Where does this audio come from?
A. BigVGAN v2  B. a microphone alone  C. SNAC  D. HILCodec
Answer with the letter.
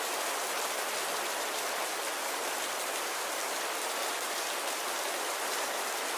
A